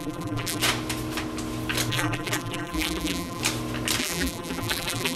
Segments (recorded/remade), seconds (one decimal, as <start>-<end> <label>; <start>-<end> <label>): 0.0-0.6 remade; 0.6-1.9 recorded; 1.9-3.4 remade; 3.4-4.0 recorded; 4.0-5.2 remade